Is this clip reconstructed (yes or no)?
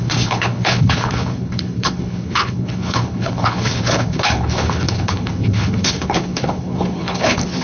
yes